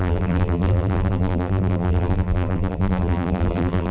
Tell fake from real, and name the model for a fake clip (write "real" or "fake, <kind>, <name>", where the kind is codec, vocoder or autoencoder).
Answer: fake, vocoder, BigVGAN v2